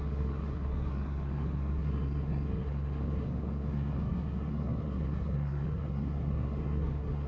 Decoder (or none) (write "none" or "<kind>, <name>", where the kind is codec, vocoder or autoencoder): codec, SNAC